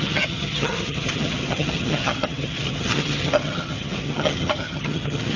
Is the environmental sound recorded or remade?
remade